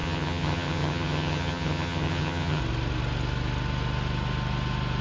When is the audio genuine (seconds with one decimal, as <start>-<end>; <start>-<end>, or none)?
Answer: 2.6-5.0